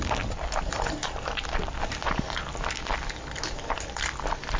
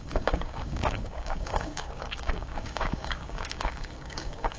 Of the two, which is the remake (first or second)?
second